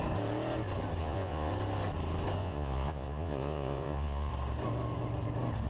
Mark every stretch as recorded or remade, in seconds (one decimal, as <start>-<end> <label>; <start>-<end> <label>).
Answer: 0.0-1.0 recorded; 1.0-1.5 remade; 1.5-2.4 recorded; 2.4-4.3 remade; 4.3-5.7 recorded